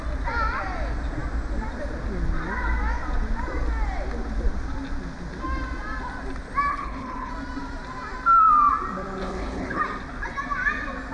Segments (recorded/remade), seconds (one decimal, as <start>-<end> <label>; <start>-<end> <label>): 0.0-6.7 recorded; 6.7-7.3 remade; 7.3-9.2 recorded; 9.2-9.8 remade; 9.8-11.1 recorded